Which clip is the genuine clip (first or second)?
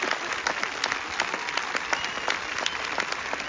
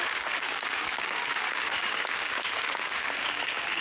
first